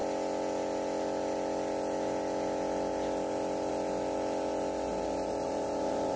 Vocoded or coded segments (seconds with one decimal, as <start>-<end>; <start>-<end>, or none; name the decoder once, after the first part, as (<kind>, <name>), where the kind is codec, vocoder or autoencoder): 4.9-6.2 (vocoder, BigVGAN v2)